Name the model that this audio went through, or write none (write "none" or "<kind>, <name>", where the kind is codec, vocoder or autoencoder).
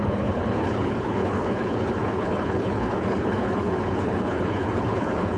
codec, HILCodec